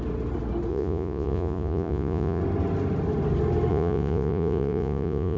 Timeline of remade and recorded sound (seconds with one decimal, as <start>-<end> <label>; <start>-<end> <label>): 0.0-0.7 recorded; 0.7-2.4 remade; 2.4-3.7 recorded; 3.7-5.4 remade